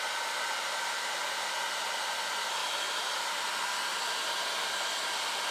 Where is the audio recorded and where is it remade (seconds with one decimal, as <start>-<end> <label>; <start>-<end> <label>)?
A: 0.0-2.6 recorded; 2.6-3.3 remade; 3.3-3.9 recorded; 3.9-5.5 remade